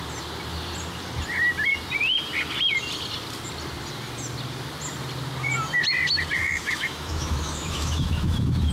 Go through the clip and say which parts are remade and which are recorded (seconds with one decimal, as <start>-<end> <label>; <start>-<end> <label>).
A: 0.0-6.4 recorded; 6.4-8.7 remade